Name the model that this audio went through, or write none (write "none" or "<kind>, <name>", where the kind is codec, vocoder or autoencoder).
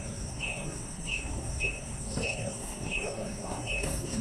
codec, SNAC